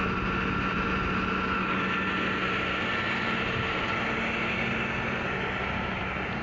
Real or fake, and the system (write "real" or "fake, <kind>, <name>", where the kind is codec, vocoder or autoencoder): real